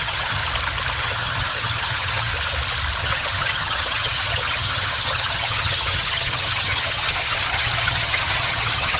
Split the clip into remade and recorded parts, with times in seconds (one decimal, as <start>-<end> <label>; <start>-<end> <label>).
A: 0.0-0.4 remade; 0.4-1.0 recorded; 1.0-2.3 remade; 2.3-3.0 recorded; 3.0-9.0 remade